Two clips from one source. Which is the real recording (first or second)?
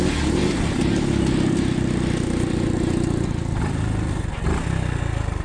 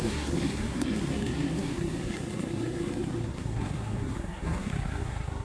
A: first